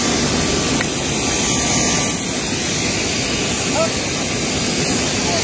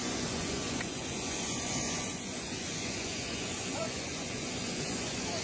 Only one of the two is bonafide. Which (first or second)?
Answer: first